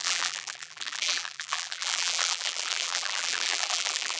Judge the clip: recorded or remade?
remade